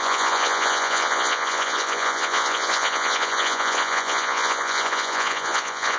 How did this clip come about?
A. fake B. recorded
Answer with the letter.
A